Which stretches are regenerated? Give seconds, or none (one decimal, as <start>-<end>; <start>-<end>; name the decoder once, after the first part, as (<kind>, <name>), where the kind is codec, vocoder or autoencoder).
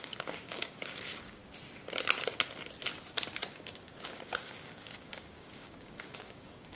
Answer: 0.0-1.4 (codec, DAC); 3.5-6.8